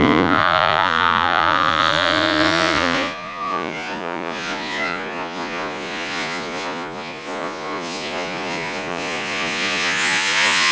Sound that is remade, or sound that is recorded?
remade